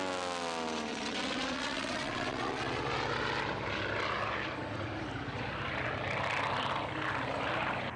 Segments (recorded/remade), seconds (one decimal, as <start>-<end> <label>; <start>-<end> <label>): 0.0-0.9 recorded; 0.9-2.9 remade; 2.9-8.0 recorded